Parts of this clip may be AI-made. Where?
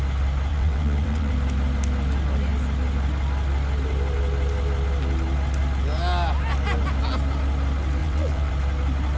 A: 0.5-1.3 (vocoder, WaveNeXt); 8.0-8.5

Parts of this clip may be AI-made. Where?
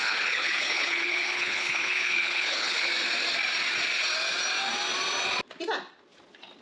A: 0.0-2.9 (codec, HILCodec)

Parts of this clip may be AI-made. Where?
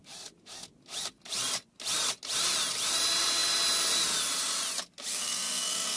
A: 5.1-6.0 (codec, SNAC)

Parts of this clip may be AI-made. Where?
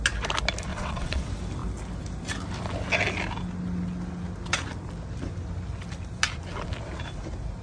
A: 0.7-1.2 (vocoder, WaveNeXt)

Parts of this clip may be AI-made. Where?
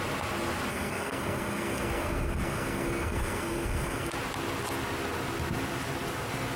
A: 0.7-4.1 (codec, SNAC)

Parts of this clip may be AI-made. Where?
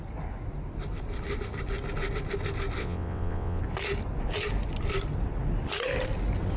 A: 2.8-3.6 (vocoder, WaveNeXt)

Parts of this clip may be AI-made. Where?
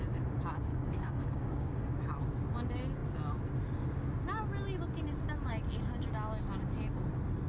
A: 0.7-1.9 (codec, DAC)